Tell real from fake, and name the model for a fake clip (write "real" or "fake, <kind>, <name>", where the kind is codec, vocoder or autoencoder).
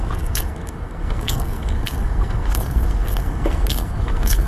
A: fake, codec, SNAC